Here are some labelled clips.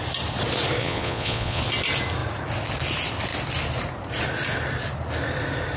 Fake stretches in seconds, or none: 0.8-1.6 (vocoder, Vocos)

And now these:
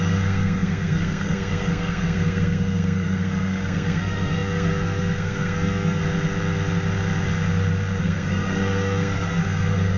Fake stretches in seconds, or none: 0.0-6.0 (codec, SNAC); 8.0-10.0